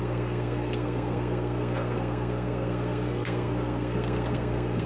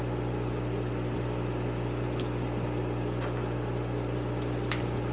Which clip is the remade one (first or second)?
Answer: first